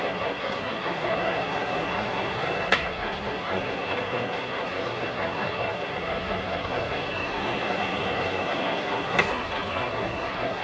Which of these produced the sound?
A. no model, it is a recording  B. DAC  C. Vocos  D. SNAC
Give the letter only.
D